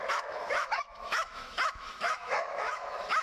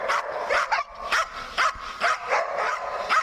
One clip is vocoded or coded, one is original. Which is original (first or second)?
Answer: second